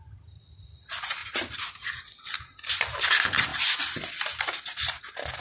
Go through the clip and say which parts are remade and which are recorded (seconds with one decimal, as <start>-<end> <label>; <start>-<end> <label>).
0.0-5.4 recorded